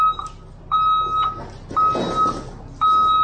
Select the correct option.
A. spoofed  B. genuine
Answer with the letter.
B